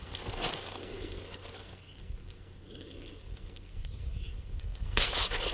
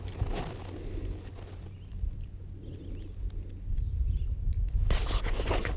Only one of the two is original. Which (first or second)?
second